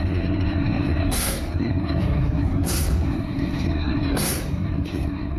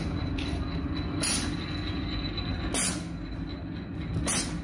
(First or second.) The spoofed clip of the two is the first